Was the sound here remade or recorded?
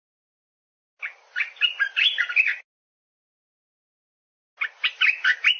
recorded